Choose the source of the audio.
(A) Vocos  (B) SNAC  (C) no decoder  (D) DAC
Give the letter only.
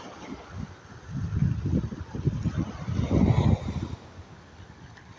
C